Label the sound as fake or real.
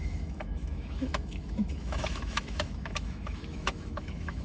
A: fake